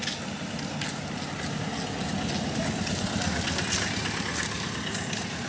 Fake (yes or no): no